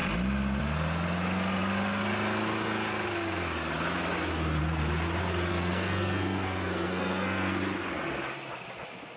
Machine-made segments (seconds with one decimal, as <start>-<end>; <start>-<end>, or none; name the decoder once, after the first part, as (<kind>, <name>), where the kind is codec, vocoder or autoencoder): 5.5-7.6 (codec, SNAC)